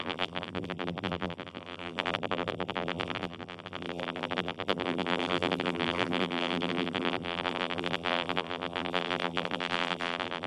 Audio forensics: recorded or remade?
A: remade